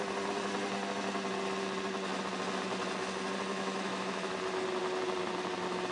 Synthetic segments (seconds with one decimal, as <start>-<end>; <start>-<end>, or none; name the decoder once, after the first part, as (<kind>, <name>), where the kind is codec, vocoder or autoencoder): 3.5-4.3 (autoencoder, DAC-VAE)